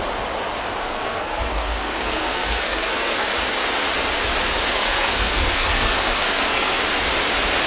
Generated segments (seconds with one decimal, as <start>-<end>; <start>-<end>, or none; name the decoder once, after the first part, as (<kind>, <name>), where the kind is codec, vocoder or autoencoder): 0.8-3.3 (codec, SNAC); 4.7-6.8